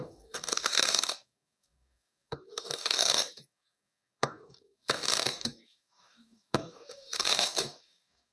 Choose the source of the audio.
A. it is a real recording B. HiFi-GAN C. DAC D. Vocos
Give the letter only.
C